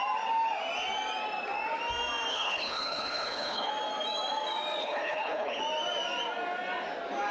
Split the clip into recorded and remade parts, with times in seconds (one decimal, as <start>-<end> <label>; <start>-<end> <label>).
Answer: 0.0-2.3 recorded; 2.3-3.7 remade; 3.7-4.8 recorded; 4.8-5.6 remade; 5.6-7.3 recorded